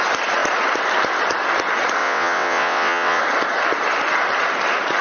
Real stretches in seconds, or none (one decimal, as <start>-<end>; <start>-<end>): 0.0-2.0; 3.2-5.0